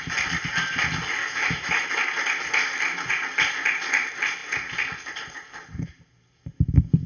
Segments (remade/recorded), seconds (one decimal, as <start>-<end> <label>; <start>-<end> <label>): 0.0-1.2 recorded; 1.2-1.9 remade; 1.9-7.1 recorded